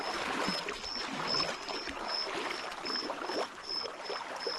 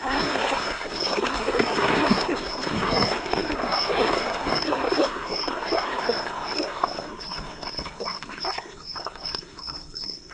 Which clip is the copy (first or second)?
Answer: second